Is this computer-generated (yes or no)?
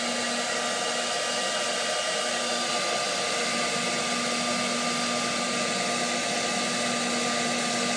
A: no